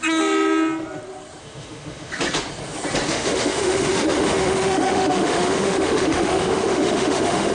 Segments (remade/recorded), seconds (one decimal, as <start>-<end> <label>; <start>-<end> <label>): 0.0-1.4 recorded; 1.4-2.1 remade; 2.1-3.1 recorded; 3.1-7.5 remade